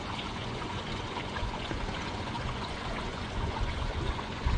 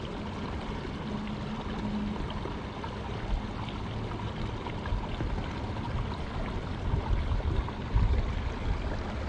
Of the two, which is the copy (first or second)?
first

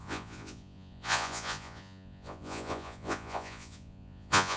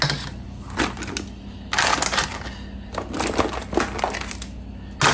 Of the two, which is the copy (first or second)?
first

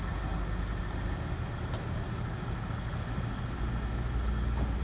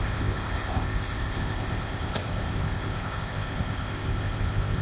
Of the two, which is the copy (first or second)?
second